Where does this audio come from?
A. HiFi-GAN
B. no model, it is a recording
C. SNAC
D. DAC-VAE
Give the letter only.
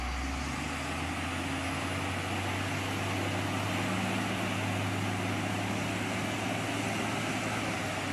B